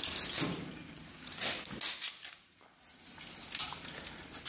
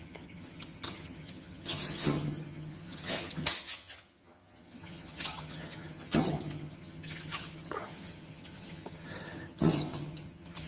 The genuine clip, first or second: first